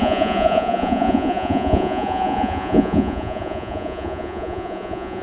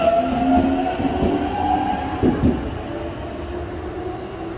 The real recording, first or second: second